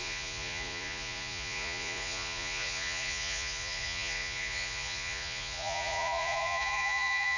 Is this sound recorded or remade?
remade